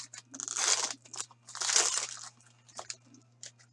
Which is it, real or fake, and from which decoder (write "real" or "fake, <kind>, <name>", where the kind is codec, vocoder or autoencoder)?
real